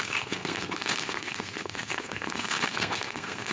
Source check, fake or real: fake